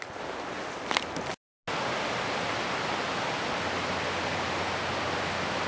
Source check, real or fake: real